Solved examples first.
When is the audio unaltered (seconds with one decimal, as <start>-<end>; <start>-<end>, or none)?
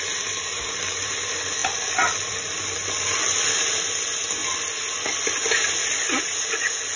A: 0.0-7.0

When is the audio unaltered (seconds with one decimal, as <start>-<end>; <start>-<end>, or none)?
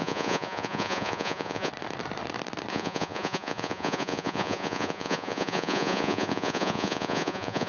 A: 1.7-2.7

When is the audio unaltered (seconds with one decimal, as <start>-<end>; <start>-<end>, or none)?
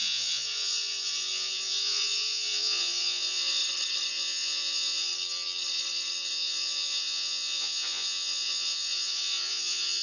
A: 3.6-4.1; 5.1-6.3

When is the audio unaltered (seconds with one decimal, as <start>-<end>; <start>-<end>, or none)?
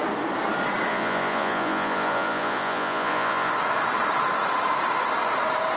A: 0.0-0.9; 3.5-5.8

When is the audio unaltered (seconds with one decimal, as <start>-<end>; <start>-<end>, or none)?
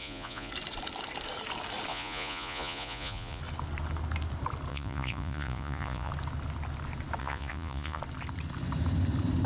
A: 0.5-1.9; 3.4-4.7; 6.1-7.2; 8.0-9.5